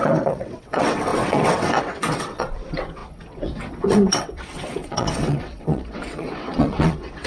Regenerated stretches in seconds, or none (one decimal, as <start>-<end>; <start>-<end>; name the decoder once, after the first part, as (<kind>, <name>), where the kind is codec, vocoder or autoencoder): 0.0-7.3 (vocoder, WaveNeXt)